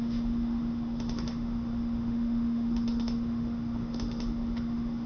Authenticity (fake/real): fake